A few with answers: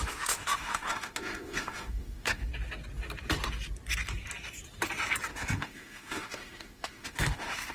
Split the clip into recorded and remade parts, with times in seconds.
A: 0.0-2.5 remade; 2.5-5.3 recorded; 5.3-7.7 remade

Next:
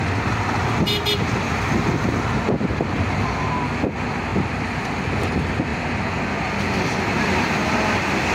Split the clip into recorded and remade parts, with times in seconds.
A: 0.0-8.3 recorded

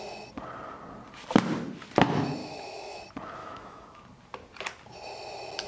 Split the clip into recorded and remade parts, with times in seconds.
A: 0.0-2.4 recorded; 2.4-3.0 remade; 3.0-3.4 recorded; 3.4-4.0 remade; 4.0-5.7 recorded

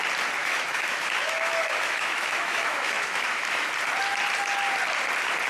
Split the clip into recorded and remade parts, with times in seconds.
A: 0.0-0.4 recorded; 0.4-3.7 remade; 3.7-5.5 recorded

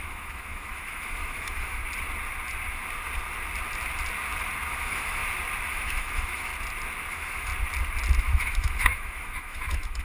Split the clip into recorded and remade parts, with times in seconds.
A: 0.0-1.8 remade; 1.8-4.7 recorded; 4.7-5.2 remade; 5.2-5.7 recorded; 5.7-6.5 remade; 6.5-7.1 recorded; 7.1-7.5 remade; 7.5-8.2 recorded; 8.2-10.0 remade